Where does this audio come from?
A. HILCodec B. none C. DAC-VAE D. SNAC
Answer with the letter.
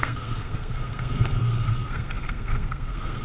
D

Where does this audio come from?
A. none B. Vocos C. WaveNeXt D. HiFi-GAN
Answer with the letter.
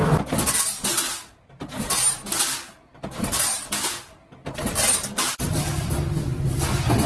A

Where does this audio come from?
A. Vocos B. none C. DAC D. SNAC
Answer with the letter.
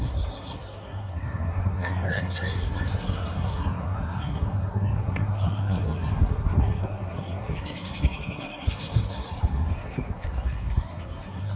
D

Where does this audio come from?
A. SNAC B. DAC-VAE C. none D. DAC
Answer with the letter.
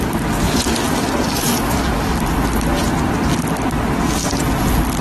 C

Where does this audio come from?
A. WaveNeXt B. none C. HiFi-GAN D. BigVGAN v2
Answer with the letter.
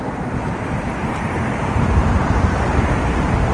B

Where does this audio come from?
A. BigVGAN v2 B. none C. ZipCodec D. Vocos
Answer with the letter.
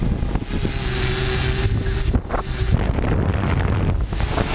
B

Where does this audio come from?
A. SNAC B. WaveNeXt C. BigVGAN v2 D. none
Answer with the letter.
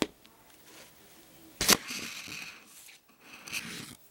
D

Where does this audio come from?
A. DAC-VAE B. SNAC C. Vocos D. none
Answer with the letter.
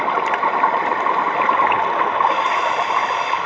D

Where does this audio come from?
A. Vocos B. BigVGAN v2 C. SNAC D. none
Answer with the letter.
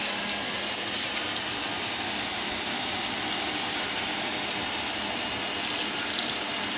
D